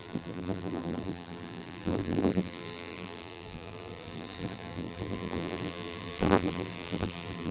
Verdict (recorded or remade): remade